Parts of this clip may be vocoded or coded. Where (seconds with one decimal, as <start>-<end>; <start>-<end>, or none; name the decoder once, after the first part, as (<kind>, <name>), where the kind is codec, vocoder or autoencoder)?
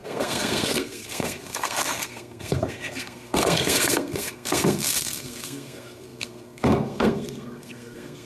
0.0-8.2 (codec, SNAC)